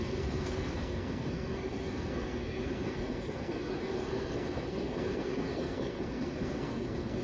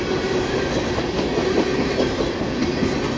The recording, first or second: second